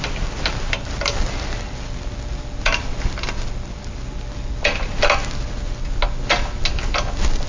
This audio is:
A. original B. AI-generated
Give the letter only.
A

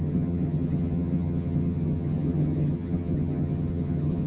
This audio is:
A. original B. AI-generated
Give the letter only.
B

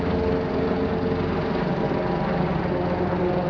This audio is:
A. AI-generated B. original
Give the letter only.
B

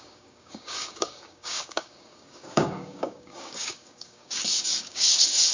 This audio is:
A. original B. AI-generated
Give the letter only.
B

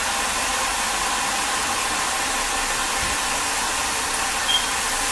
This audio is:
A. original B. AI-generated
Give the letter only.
A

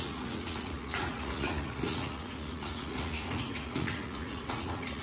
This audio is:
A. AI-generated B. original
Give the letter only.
A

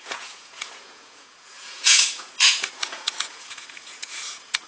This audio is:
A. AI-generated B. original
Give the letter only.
A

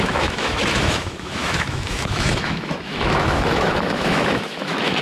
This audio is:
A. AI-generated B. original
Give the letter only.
A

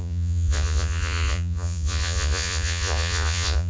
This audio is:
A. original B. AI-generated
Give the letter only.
B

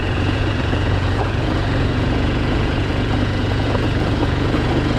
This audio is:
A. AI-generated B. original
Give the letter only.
A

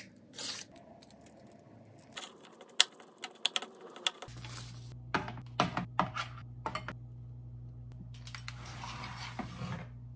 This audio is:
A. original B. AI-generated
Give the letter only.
A